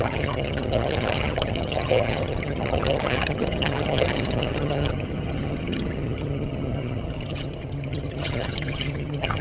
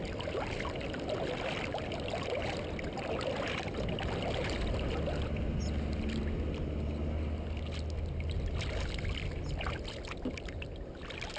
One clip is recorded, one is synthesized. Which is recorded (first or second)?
second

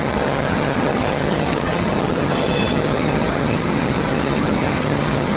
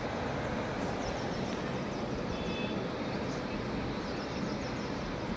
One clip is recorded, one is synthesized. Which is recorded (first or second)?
second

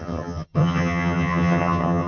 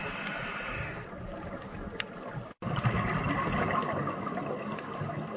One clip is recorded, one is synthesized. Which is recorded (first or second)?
second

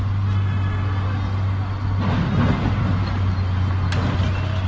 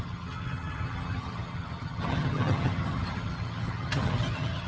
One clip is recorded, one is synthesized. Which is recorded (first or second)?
first